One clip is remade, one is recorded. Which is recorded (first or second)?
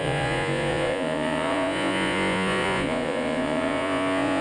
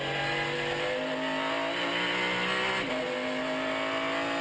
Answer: second